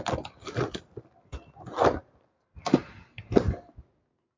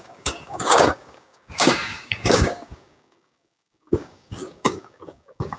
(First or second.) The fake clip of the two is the second